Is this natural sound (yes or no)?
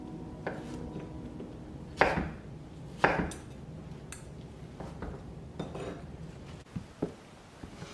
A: yes